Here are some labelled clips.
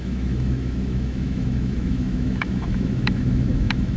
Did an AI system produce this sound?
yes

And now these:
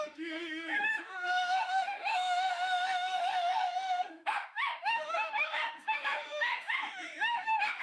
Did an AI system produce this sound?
yes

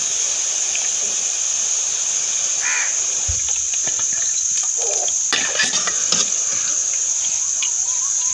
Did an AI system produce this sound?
no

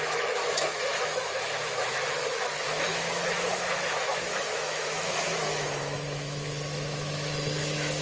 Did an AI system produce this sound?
yes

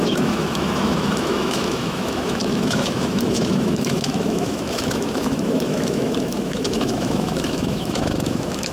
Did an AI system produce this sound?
yes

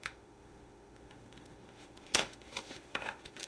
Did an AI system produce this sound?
yes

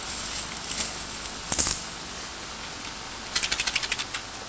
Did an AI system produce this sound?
no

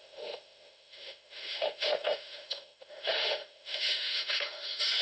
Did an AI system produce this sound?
yes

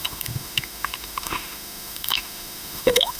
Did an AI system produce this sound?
yes